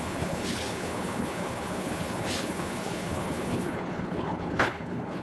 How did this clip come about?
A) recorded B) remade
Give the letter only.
B